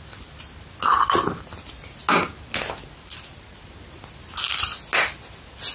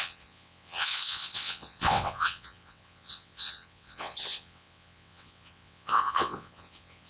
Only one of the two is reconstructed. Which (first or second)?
second